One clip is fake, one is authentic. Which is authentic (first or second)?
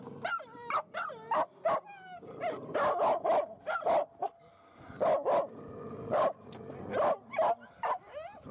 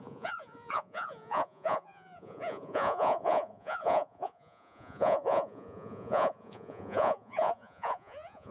first